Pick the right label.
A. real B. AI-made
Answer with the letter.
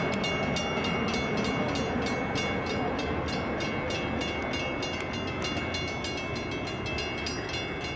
A